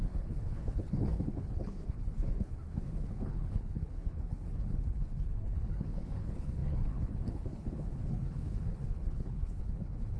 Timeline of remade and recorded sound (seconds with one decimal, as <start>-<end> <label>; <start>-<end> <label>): 0.0-10.2 remade